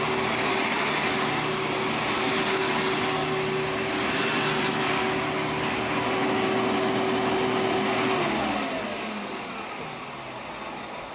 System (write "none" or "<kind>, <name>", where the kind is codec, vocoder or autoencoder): none